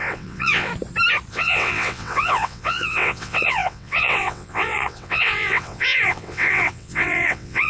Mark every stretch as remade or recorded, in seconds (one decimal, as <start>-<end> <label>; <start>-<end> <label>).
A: 0.0-0.7 remade; 0.7-1.3 recorded; 1.3-7.7 remade